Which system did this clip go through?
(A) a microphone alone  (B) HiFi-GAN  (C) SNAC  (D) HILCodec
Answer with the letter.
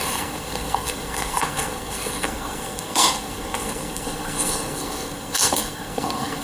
C